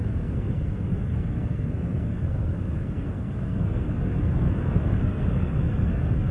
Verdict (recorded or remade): remade